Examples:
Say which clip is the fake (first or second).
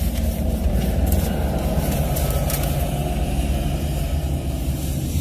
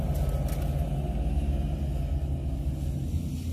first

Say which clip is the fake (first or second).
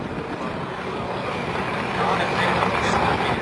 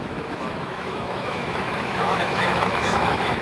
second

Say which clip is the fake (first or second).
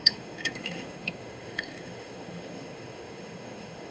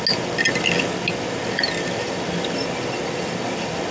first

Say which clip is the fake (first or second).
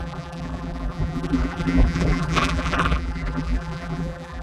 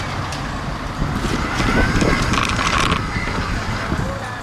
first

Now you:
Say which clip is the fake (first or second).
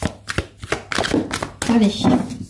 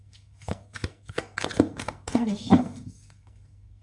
second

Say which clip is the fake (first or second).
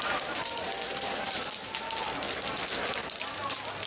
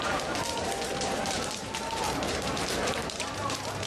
second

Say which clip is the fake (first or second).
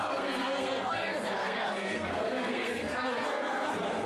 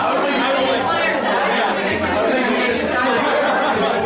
first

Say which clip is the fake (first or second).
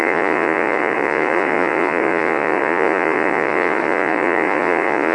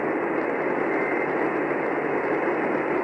first